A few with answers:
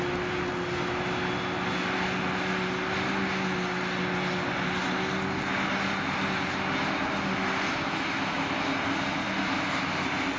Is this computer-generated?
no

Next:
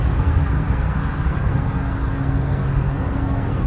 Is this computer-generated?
yes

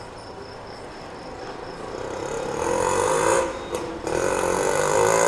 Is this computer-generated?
no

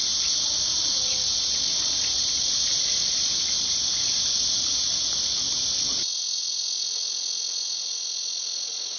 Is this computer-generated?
no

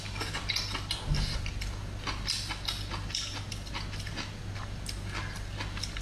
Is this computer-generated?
no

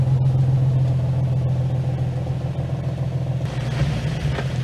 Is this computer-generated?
no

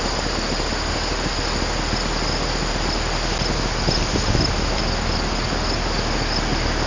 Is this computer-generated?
no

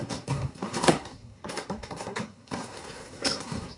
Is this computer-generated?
yes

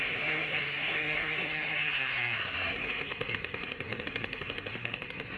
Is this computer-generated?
yes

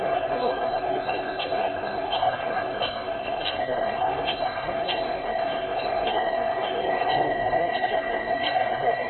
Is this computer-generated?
yes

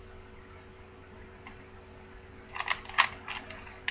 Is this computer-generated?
no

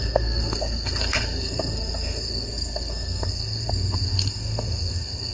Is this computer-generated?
yes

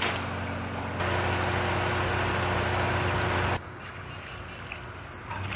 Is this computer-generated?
no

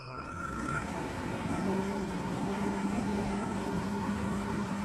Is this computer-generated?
yes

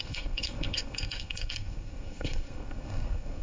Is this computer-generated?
yes